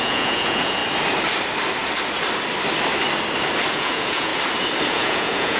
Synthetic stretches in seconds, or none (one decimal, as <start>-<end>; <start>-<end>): 0.0-0.8; 3.7-4.3; 4.9-5.6